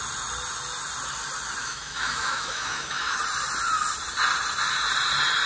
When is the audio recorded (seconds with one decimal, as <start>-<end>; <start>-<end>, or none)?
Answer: 0.0-1.6; 3.2-5.5